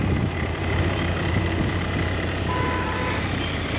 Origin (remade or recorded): recorded